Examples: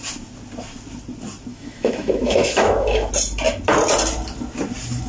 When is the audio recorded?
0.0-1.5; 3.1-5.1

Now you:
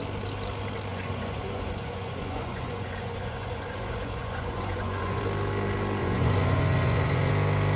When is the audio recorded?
0.0-0.9; 5.2-6.0; 7.3-7.8

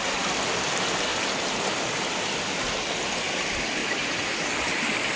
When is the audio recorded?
0.0-3.8; 4.5-5.2